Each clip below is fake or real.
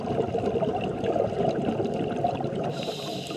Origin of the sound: real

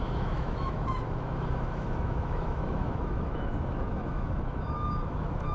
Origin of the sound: fake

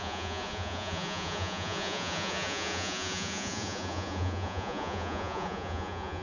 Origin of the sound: fake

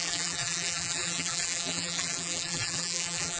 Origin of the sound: fake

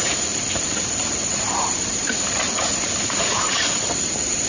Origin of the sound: fake